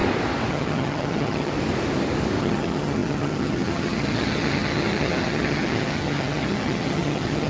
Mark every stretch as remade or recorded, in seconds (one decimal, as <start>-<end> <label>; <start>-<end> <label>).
0.0-0.5 recorded; 0.5-1.5 remade; 1.5-2.4 recorded; 2.4-7.5 remade